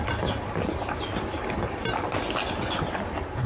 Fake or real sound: real